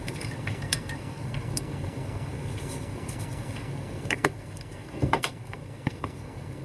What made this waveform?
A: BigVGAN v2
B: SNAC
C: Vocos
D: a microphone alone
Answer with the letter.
B